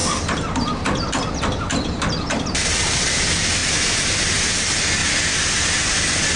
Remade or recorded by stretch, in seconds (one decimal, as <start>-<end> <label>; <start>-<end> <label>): 0.0-2.5 remade; 2.5-3.6 recorded; 3.6-4.5 remade; 4.5-5.0 recorded; 5.0-6.0 remade; 6.0-6.4 recorded